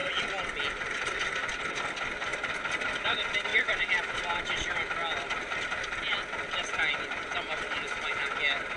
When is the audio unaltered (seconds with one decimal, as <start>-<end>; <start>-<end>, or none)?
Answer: 0.0-8.8